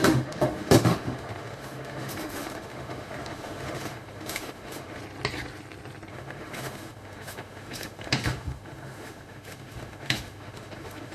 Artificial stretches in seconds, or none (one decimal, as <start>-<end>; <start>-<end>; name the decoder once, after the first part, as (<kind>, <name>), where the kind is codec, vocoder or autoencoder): 0.0-5.0 (autoencoder, DAC-VAE); 6.1-11.1